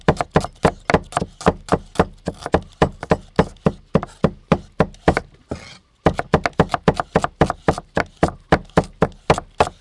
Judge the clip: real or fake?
real